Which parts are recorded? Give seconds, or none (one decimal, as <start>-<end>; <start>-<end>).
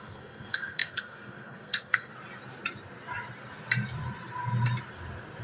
2.1-5.4